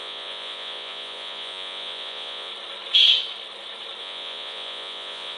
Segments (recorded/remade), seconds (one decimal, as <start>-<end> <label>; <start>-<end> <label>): 0.0-2.5 remade; 2.5-4.0 recorded; 4.0-5.4 remade